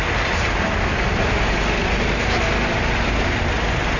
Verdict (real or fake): real